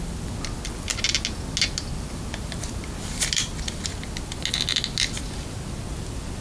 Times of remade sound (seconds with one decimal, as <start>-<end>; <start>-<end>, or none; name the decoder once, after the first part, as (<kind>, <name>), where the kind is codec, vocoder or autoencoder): none